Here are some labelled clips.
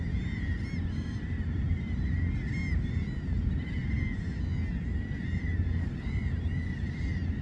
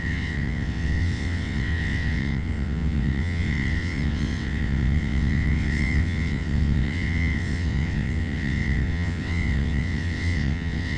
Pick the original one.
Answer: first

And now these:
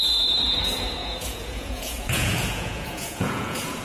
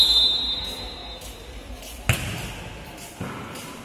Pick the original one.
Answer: second